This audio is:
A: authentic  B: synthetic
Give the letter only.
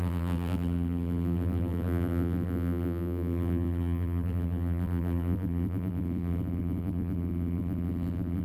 B